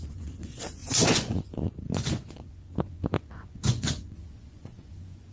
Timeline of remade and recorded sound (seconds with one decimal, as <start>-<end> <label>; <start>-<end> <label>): 0.0-5.3 remade